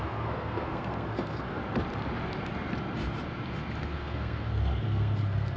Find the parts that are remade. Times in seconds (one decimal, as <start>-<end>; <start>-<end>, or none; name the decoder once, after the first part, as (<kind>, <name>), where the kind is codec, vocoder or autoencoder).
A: 0.0-1.6 (codec, SNAC); 3.8-5.6